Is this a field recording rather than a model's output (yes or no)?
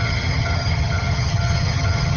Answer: no